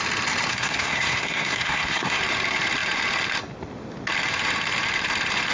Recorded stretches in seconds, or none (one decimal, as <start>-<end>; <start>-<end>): 0.0-0.5; 2.2-5.5